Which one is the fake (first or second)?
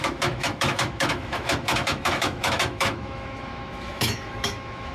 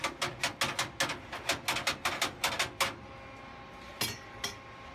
first